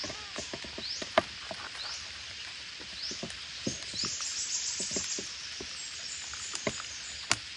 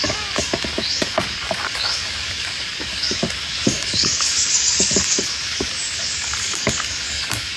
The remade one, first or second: second